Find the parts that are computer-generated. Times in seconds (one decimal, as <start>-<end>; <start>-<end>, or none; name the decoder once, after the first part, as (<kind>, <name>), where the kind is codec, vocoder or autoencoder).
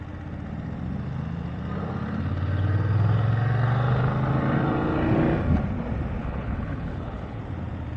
6.2-7.4 (codec, HILCodec)